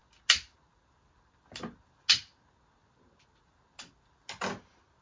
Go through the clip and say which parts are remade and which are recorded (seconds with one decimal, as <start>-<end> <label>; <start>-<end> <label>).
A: 0.0-5.0 recorded